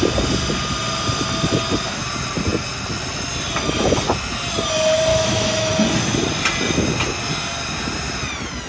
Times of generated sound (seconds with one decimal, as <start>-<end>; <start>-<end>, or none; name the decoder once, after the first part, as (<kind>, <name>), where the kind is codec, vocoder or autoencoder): 5.1-5.7 (autoencoder, DAC-VAE)